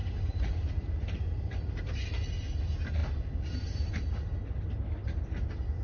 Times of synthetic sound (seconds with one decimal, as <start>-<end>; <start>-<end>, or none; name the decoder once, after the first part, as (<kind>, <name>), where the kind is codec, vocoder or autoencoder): 0.0-1.8 (vocoder, BigVGAN v2)